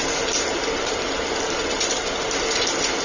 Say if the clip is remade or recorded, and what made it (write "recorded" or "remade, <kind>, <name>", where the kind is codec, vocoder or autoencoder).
remade, vocoder, BigVGAN v2